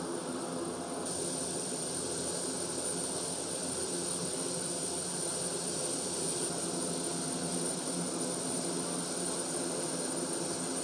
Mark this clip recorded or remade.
recorded